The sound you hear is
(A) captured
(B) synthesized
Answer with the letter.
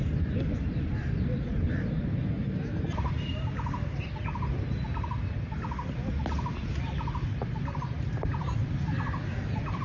A